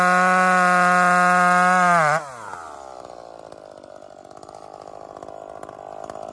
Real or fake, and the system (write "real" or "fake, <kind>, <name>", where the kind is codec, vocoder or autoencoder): real